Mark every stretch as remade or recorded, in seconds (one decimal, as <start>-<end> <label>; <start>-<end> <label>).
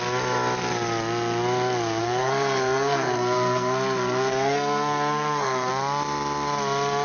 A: 0.0-2.0 recorded; 2.0-5.7 remade; 5.7-7.0 recorded